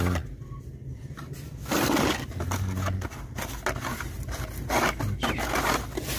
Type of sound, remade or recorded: recorded